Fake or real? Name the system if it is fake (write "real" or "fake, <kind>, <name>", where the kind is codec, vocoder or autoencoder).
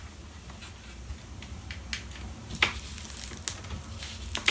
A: real